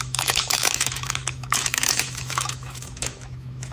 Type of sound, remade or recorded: remade